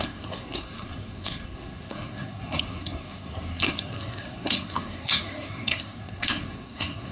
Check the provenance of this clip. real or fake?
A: fake